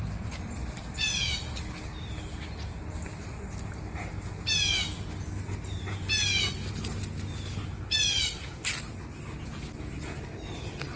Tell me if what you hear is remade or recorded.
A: recorded